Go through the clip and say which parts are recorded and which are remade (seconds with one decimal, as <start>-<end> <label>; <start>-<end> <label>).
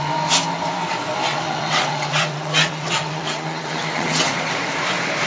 0.0-1.3 recorded; 1.3-4.5 remade; 4.5-5.3 recorded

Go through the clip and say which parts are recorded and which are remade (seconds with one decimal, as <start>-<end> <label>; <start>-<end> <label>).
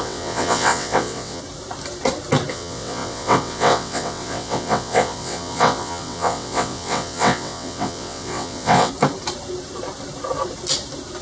0.0-1.4 remade; 1.4-2.5 recorded; 2.5-8.9 remade; 8.9-11.2 recorded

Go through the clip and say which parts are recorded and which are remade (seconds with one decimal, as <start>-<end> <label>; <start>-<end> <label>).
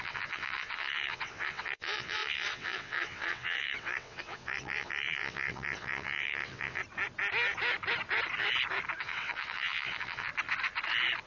0.0-6.8 remade; 6.8-9.0 recorded; 9.0-10.3 remade; 10.3-11.3 recorded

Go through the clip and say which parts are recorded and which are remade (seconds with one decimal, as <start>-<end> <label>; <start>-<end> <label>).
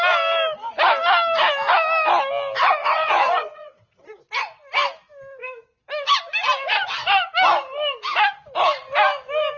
0.0-2.8 recorded; 2.8-4.2 remade; 4.2-9.6 recorded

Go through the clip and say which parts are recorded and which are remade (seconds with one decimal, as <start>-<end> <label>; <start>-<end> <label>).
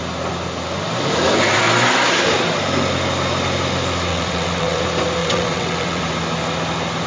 0.0-4.1 recorded; 4.1-4.8 remade; 4.8-5.2 recorded; 5.2-6.0 remade; 6.0-7.1 recorded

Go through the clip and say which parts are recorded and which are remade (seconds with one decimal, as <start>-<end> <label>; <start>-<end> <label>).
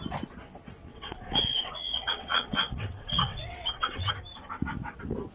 0.0-0.9 recorded; 0.9-4.1 remade; 4.1-5.3 recorded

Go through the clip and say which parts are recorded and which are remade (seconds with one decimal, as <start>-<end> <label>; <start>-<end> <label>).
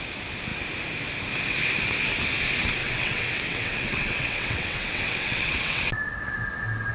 0.0-2.8 recorded; 2.8-5.9 remade; 5.9-6.9 recorded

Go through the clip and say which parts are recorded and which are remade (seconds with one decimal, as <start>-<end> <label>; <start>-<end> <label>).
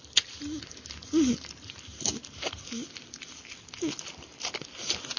0.0-5.2 recorded